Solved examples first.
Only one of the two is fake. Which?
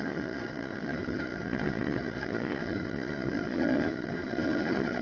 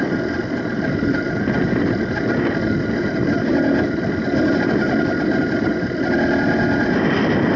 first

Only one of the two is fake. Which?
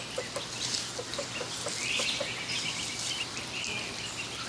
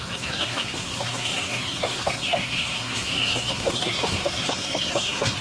second